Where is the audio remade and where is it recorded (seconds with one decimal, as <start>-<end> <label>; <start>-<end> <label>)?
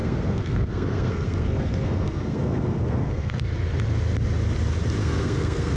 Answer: 0.0-3.5 remade; 3.5-5.0 recorded; 5.0-5.8 remade